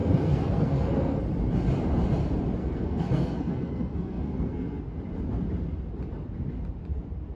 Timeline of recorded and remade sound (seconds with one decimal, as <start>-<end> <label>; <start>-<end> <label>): 0.0-1.2 remade; 1.2-2.6 recorded; 2.6-4.8 remade; 4.8-7.4 recorded